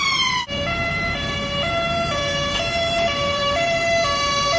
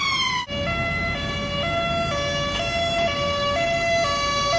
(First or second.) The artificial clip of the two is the first